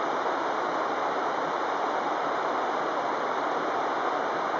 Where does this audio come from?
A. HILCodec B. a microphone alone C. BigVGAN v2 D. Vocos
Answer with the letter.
B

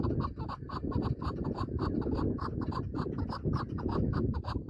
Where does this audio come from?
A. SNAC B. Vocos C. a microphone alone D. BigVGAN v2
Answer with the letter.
C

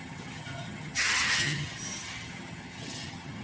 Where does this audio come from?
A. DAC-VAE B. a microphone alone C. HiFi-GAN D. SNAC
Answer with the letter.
C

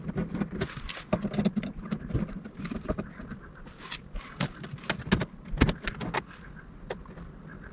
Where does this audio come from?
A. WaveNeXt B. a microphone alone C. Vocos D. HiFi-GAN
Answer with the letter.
B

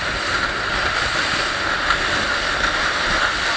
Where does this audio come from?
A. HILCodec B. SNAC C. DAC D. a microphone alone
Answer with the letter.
D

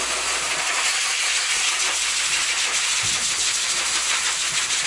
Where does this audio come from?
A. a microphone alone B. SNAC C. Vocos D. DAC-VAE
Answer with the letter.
A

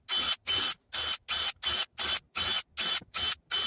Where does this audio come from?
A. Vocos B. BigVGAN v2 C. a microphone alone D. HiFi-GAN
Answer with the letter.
C